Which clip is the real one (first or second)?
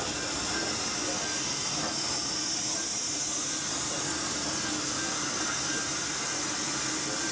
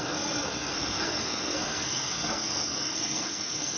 first